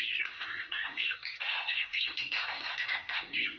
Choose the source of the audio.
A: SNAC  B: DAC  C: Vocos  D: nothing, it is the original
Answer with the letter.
A